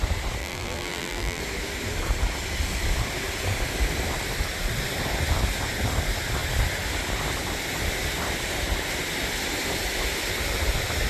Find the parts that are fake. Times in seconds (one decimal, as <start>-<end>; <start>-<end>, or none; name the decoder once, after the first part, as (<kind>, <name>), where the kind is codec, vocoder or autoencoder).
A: 0.4-1.4 (vocoder, BigVGAN v2)